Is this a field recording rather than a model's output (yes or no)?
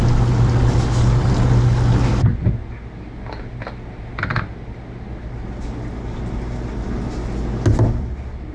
yes